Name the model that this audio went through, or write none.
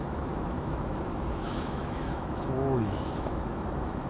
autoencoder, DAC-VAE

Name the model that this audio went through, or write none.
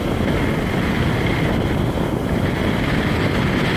none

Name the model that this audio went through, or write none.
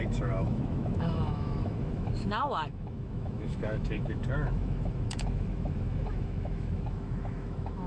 autoencoder, DAC-VAE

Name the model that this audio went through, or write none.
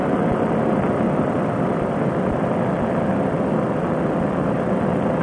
none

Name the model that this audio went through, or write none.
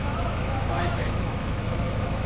autoencoder, DAC-VAE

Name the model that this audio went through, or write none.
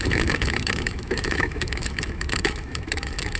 autoencoder, DAC-VAE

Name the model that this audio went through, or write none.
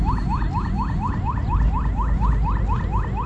none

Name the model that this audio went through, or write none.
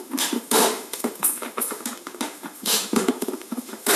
autoencoder, DAC-VAE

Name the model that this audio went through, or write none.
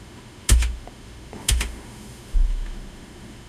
autoencoder, DAC-VAE